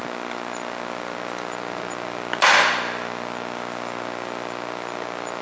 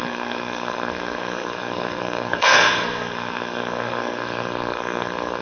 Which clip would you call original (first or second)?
first